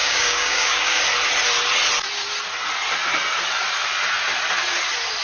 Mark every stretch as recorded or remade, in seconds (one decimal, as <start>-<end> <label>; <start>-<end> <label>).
0.0-1.0 remade; 1.0-5.2 recorded